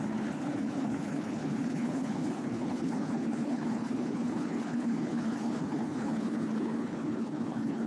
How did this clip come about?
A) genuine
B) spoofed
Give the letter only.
B